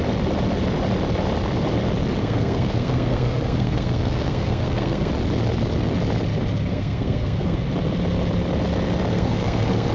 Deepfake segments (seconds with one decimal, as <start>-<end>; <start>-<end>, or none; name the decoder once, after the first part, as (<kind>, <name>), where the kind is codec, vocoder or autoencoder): 2.2-5.1 (codec, SNAC); 6.7-7.6; 9.1-9.9